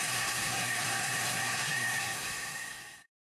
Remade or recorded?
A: remade